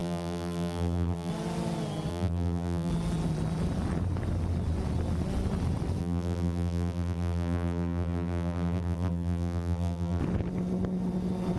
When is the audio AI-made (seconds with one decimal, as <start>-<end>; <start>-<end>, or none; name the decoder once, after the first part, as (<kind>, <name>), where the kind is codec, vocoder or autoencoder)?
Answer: 0.0-1.3 (vocoder, BigVGAN v2); 2.1-2.9; 6.0-10.2

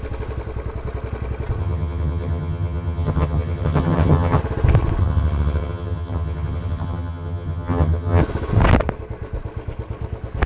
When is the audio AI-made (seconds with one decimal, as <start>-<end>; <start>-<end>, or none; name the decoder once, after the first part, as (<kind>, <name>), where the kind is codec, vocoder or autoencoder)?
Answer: 1.6-4.4 (vocoder, HiFi-GAN); 5.0-8.2

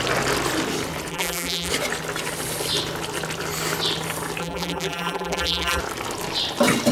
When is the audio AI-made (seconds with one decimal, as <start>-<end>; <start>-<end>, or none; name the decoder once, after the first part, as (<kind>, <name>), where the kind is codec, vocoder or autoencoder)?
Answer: 1.1-1.7 (vocoder, BigVGAN v2); 4.4-5.8

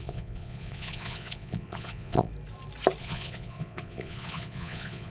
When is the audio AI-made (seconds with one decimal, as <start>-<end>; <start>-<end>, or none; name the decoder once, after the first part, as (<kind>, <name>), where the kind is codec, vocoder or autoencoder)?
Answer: 0.0-2.3 (vocoder, Vocos); 3.0-5.1

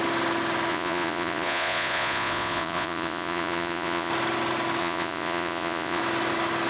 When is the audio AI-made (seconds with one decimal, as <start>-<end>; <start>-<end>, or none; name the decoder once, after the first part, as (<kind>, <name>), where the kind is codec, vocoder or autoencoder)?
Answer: 0.7-4.1 (vocoder, Vocos); 4.8-6.0